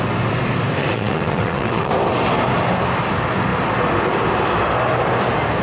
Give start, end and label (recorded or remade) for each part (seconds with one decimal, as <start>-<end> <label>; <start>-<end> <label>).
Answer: 0.0-0.8 recorded; 0.8-1.9 remade; 1.9-5.6 recorded